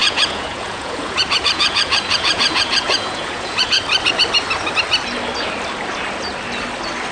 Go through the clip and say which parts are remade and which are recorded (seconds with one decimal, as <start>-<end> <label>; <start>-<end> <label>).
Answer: 0.0-3.8 remade; 3.8-7.1 recorded